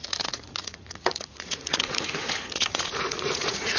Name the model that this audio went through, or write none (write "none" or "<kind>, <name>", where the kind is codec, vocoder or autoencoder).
vocoder, Vocos